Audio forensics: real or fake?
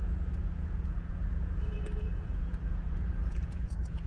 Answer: fake